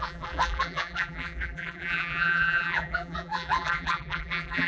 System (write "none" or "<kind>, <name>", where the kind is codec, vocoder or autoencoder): vocoder, BigVGAN v2